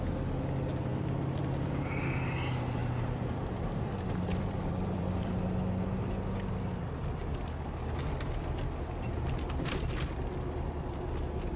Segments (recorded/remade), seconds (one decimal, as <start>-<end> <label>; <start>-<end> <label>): 0.0-2.8 recorded; 2.8-5.4 remade; 5.4-11.6 recorded